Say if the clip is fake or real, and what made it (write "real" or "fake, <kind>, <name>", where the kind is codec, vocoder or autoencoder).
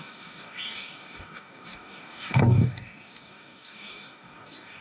fake, codec, DAC